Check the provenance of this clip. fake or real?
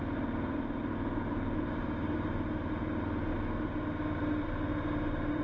real